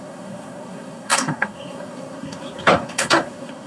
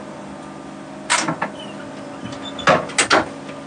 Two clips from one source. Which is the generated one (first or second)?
first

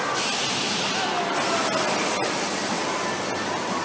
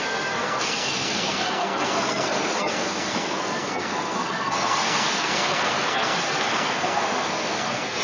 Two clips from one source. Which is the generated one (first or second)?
second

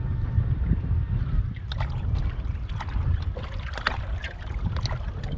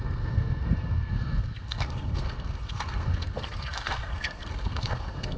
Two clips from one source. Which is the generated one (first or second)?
second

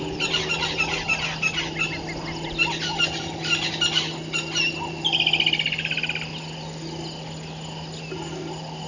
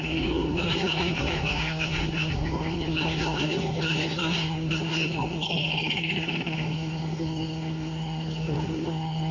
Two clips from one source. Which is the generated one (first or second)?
second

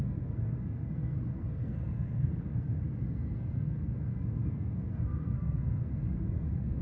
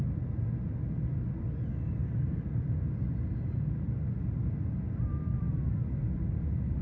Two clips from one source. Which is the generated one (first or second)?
first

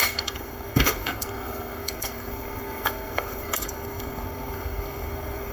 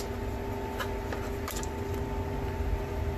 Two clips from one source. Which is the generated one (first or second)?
first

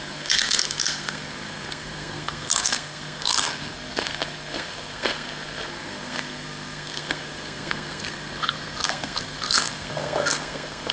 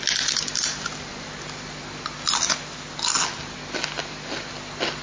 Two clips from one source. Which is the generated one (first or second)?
first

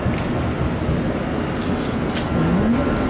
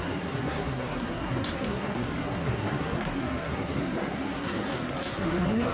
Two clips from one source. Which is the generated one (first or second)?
second